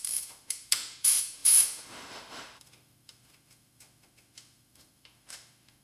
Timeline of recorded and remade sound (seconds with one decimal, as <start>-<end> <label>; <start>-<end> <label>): 0.0-5.8 remade